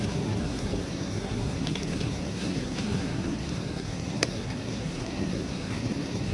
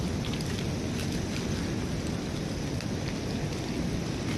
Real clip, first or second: second